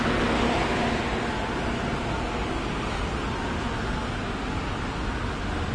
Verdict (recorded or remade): recorded